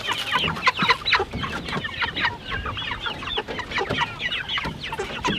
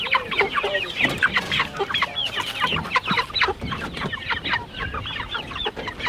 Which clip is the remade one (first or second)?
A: second